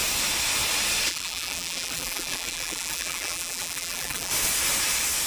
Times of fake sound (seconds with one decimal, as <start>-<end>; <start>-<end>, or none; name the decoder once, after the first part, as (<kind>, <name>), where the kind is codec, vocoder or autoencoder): 1.1-4.3 (vocoder, BigVGAN v2)